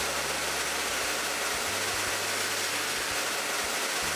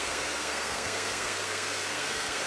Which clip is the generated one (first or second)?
second